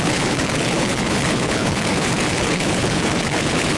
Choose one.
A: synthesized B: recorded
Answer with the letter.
A